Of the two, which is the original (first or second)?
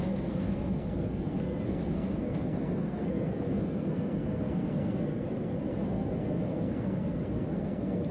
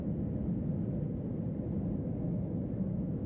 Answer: second